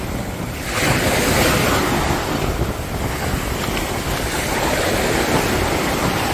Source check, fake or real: real